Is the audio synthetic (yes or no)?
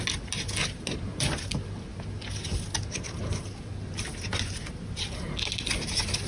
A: no